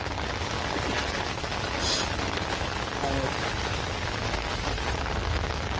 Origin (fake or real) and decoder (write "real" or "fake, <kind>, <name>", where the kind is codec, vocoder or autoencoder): real